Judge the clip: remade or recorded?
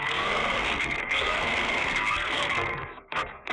remade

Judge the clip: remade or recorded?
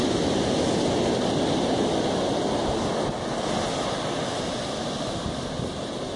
recorded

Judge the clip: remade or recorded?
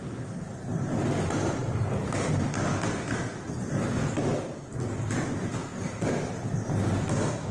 recorded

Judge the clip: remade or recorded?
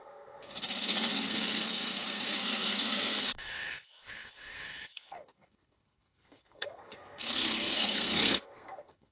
remade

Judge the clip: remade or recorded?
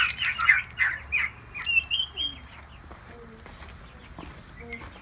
recorded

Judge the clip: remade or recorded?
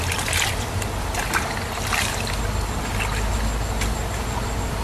recorded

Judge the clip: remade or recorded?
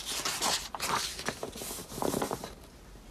recorded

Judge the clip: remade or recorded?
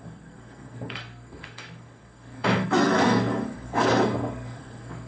remade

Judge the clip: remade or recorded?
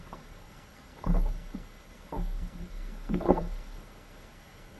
remade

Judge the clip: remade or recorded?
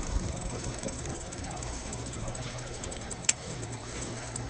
remade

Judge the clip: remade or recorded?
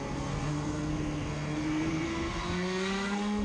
remade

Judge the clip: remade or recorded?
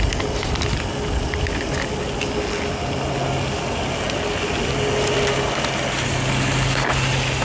recorded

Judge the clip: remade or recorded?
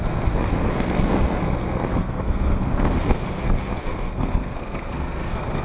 remade